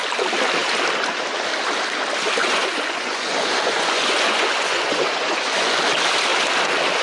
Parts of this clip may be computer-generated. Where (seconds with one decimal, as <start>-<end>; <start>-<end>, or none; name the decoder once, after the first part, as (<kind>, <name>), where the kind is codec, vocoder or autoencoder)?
2.4-5.8 (vocoder, Vocos)